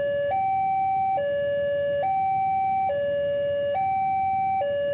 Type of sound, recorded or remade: recorded